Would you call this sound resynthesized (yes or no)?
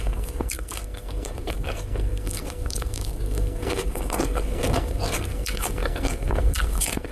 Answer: yes